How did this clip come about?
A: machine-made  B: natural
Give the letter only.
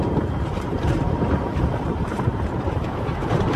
A